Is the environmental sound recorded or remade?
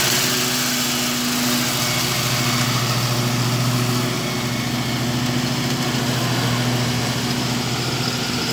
recorded